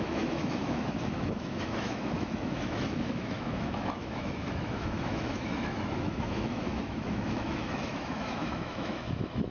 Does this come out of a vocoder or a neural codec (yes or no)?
yes